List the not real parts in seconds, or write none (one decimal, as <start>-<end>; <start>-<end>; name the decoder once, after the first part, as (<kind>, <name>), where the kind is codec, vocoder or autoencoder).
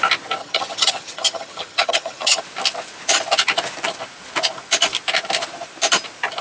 0.4-2.4 (vocoder, HiFi-GAN)